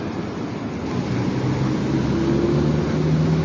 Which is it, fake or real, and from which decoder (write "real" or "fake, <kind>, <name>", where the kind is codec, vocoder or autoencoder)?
real